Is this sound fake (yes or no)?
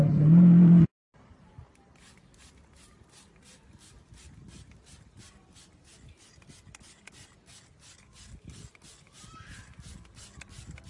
no